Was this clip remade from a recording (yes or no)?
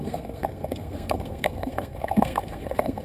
yes